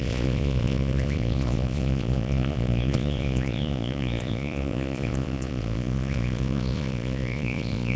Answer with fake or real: fake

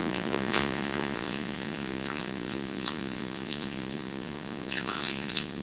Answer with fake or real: fake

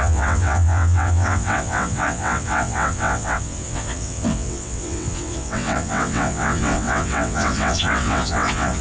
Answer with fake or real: fake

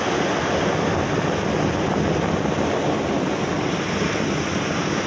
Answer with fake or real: real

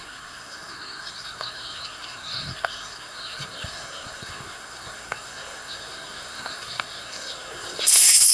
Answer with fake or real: fake